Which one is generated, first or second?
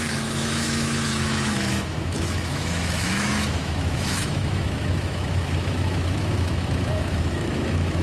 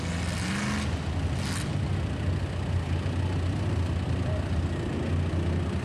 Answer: first